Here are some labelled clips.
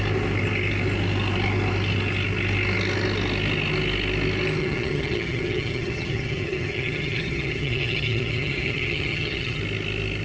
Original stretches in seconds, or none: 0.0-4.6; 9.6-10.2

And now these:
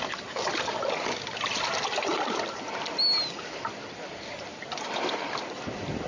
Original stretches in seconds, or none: 0.0-4.5; 5.4-6.1

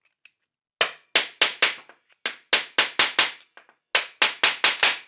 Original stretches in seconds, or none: 0.0-5.1

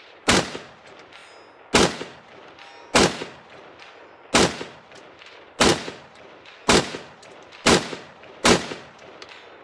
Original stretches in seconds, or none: 1.2-5.3